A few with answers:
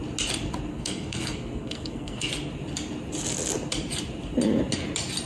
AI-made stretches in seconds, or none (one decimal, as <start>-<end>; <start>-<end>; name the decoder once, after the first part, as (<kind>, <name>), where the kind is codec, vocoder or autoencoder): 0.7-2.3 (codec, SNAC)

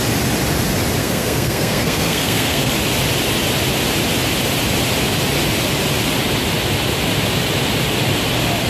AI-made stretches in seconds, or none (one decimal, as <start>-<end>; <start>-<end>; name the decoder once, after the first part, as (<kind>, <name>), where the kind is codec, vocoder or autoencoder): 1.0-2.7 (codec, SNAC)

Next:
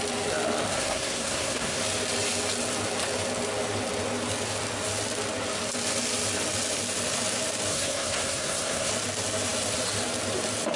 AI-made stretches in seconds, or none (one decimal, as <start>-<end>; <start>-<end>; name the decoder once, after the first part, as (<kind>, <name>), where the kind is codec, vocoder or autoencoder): 0.7-1.8 (codec, SNAC); 7.7-8.9